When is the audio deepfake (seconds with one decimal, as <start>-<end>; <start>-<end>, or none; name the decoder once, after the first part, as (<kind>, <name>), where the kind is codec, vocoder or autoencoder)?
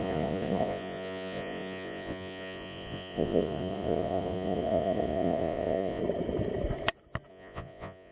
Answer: 0.0-6.0 (vocoder, Vocos); 7.3-8.1